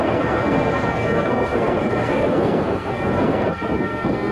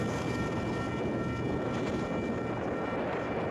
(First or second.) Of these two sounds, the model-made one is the first